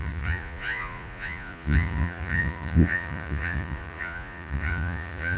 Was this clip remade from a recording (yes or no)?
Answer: yes